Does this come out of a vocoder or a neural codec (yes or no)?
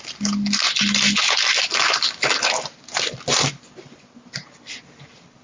no